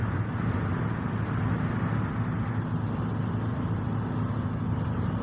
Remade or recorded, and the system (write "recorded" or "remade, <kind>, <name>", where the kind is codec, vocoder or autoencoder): recorded